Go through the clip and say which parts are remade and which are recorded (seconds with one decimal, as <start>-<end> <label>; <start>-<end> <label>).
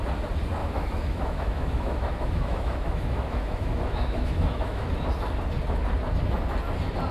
0.0-0.6 recorded; 0.6-4.9 remade; 4.9-7.1 recorded